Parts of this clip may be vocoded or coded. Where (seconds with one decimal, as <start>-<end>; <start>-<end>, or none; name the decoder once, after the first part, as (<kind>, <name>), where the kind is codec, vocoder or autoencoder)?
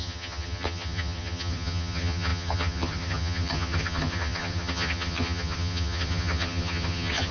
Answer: 0.0-7.3 (vocoder, HiFi-GAN)